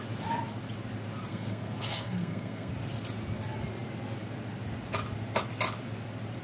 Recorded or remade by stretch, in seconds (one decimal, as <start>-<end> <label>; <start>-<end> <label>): 0.0-1.3 recorded; 1.3-2.7 remade; 2.7-6.4 recorded